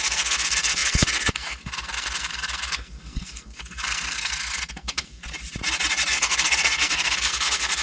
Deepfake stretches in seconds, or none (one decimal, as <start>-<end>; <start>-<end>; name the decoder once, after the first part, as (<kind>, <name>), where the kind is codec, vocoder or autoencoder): 0.0-5.2 (codec, SNAC); 6.1-7.8